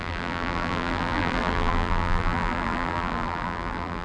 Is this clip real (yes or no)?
no